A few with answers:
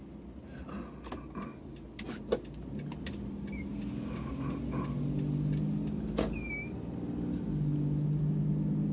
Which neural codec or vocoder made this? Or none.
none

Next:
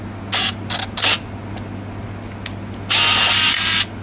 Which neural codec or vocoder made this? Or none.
none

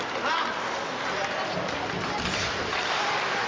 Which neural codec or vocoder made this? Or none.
none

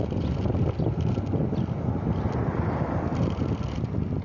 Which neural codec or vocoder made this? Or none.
none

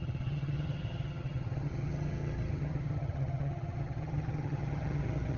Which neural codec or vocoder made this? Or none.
vocoder, HiFi-GAN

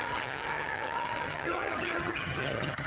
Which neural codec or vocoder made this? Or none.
vocoder, HiFi-GAN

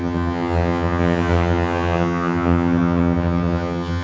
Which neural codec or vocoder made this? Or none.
vocoder, HiFi-GAN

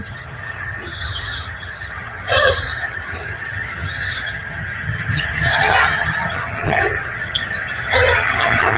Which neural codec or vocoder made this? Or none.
vocoder, HiFi-GAN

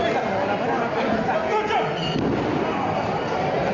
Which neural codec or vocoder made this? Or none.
none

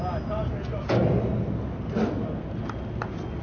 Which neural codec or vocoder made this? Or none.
none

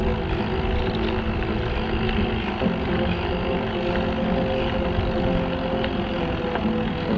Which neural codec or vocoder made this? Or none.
none